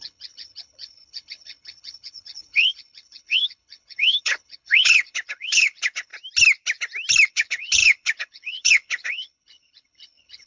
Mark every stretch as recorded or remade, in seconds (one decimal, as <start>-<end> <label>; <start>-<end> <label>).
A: 0.0-6.1 remade; 6.1-7.3 recorded; 7.3-10.5 remade